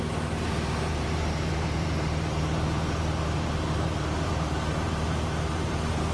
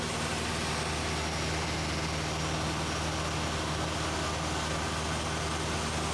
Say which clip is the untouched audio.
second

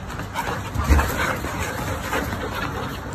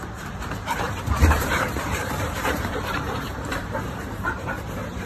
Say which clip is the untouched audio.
first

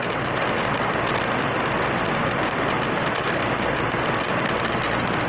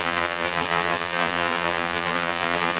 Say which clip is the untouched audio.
first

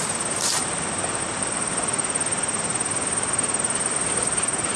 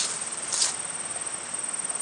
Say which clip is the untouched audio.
second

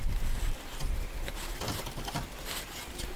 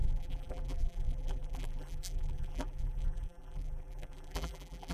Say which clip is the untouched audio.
first